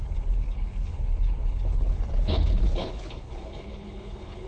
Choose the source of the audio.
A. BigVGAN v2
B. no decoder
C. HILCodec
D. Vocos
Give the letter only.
C